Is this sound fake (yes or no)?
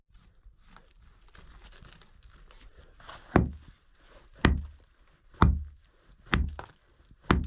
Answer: no